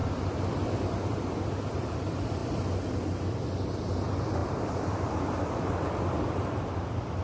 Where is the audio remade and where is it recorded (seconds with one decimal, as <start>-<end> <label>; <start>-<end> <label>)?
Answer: 0.0-2.4 remade; 2.4-3.6 recorded; 3.6-7.2 remade